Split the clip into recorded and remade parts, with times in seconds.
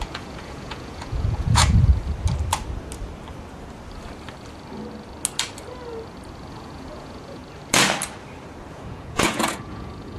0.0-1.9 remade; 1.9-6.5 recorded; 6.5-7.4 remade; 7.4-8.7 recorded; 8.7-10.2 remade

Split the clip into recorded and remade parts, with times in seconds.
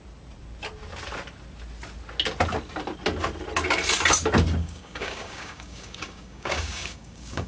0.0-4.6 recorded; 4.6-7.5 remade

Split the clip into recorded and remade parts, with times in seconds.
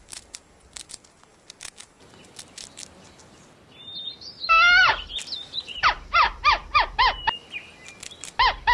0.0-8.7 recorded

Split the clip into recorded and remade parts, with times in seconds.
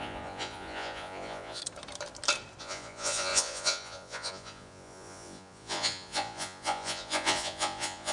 0.0-1.6 remade; 1.6-2.6 recorded; 2.6-8.1 remade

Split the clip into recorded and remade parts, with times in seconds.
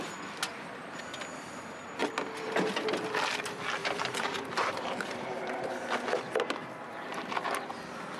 0.0-3.8 recorded; 3.8-5.7 remade; 5.7-6.9 recorded; 6.9-7.5 remade; 7.5-8.2 recorded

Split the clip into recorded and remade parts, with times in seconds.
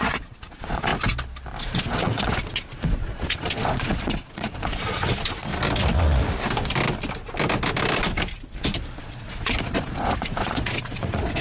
0.0-0.9 remade; 0.9-1.6 recorded; 1.6-5.5 remade; 5.5-9.0 recorded; 9.0-11.4 remade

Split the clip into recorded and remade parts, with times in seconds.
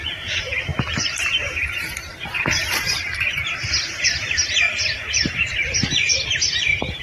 0.0-3.6 remade; 3.6-4.7 recorded; 4.7-6.0 remade; 6.0-7.0 recorded